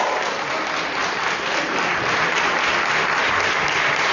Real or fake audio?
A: real